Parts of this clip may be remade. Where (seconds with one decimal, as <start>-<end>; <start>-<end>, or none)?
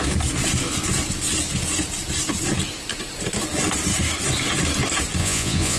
5.2-5.8